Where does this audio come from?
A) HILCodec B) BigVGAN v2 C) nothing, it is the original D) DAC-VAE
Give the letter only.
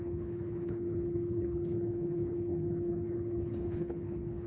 A